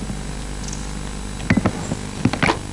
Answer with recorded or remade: recorded